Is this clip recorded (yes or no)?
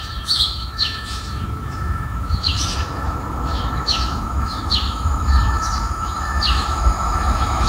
no